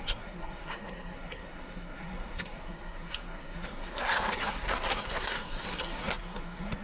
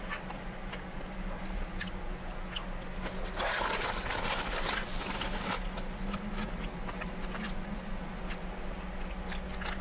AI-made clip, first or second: first